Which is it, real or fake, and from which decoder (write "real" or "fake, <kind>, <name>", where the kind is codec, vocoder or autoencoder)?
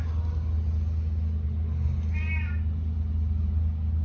real